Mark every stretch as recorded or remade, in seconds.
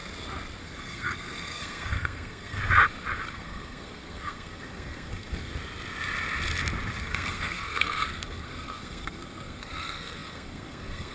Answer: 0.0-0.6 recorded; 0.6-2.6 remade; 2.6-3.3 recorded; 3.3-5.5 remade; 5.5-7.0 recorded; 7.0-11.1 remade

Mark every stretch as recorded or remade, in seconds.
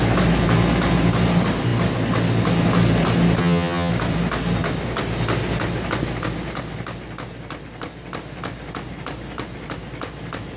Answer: 0.0-3.4 recorded; 3.4-3.9 remade; 3.9-10.6 recorded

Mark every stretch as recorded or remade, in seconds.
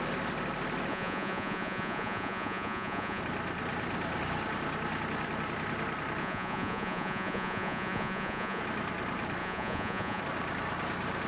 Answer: 0.0-0.9 recorded; 0.9-3.2 remade; 3.2-6.2 recorded; 6.2-8.6 remade; 8.6-9.4 recorded; 9.4-10.2 remade; 10.2-11.3 recorded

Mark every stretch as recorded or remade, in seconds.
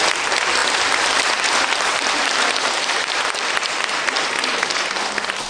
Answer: 0.0-0.6 recorded; 0.6-3.9 remade; 3.9-5.5 recorded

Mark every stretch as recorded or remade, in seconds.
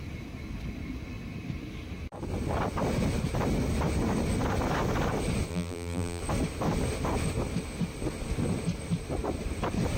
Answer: 0.0-5.5 recorded; 5.5-6.2 remade; 6.2-10.0 recorded